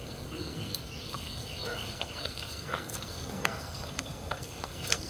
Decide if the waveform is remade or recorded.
remade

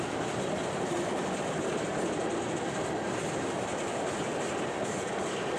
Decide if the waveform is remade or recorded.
remade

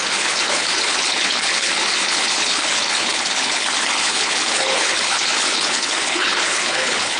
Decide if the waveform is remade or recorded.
remade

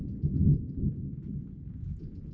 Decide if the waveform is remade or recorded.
recorded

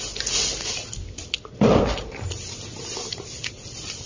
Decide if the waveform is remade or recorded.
recorded